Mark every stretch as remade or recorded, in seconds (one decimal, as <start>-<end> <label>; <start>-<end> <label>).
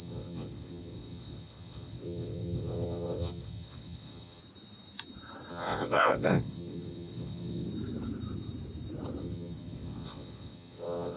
0.0-4.4 remade; 4.4-5.5 recorded; 5.5-7.7 remade; 7.7-9.2 recorded; 9.2-11.2 remade